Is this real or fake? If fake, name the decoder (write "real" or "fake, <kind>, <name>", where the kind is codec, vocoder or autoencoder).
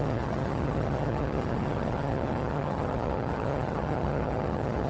fake, vocoder, HiFi-GAN